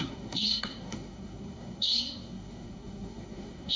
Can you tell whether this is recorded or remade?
remade